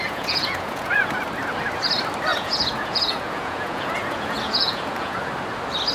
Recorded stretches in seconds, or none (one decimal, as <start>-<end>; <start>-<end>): 1.2-2.3; 5.3-5.9